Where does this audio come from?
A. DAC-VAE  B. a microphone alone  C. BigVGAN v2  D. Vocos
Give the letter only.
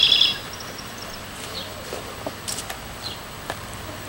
C